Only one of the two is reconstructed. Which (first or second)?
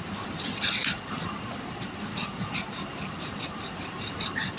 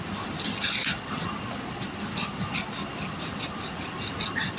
first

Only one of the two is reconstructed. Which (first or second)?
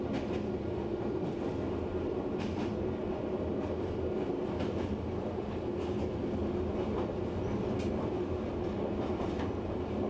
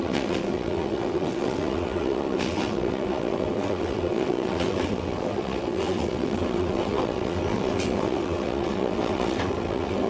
second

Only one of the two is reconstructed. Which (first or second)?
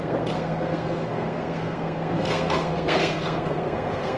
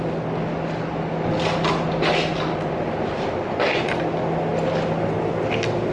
first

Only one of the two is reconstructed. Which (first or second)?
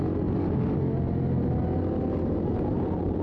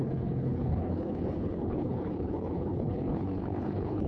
second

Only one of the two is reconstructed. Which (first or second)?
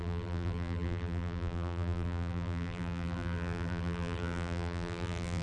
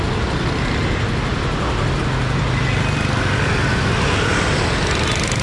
first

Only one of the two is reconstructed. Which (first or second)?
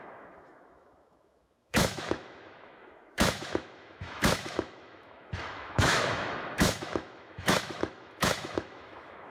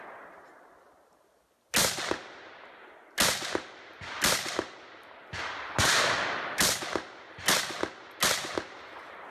first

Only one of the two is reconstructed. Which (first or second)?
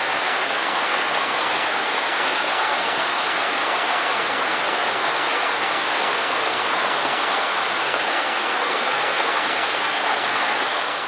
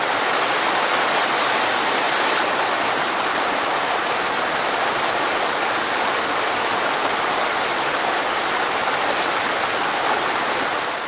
first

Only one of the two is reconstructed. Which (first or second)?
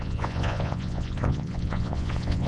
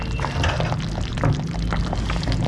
first